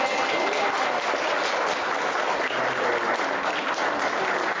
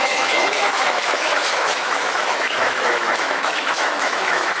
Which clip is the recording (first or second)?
first